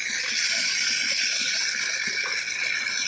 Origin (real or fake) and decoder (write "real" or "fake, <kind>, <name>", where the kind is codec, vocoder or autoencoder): real